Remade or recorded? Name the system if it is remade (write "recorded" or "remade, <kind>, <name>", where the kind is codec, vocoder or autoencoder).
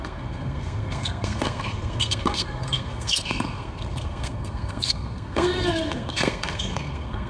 remade, codec, SNAC